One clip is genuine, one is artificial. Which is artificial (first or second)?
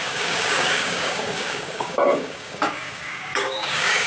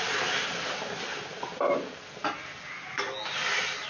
first